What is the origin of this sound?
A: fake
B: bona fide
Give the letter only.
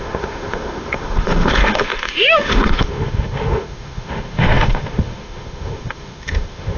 A